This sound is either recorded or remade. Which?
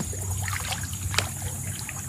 recorded